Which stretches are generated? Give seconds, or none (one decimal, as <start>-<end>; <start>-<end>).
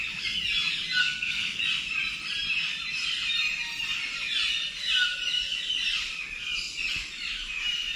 1.0-1.6